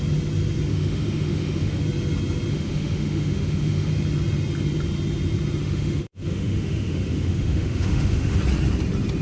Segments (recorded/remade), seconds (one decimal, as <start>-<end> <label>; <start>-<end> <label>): 0.0-0.7 recorded; 0.7-1.8 remade; 1.8-2.5 recorded; 2.5-3.9 remade; 3.9-5.6 recorded; 5.6-8.4 remade; 8.4-9.2 recorded